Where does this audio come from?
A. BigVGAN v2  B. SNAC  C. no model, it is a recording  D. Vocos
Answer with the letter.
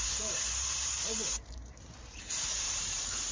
A